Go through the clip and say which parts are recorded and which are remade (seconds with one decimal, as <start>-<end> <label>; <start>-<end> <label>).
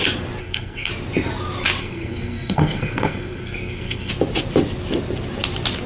0.0-0.4 recorded; 0.4-0.9 remade; 0.9-1.8 recorded; 1.8-4.1 remade; 4.1-5.9 recorded